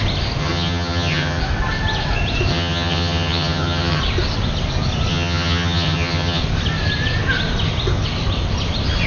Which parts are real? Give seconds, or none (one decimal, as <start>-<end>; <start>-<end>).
0.0-0.4; 1.4-2.5; 4.0-5.1; 6.4-9.1